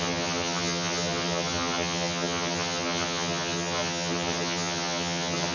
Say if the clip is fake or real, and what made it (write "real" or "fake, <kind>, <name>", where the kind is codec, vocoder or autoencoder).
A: fake, vocoder, HiFi-GAN